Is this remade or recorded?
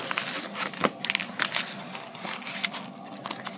recorded